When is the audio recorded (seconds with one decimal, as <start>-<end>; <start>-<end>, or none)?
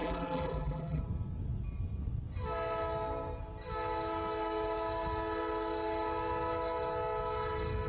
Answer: 1.0-7.9